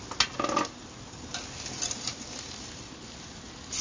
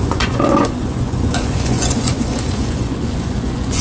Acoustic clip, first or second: first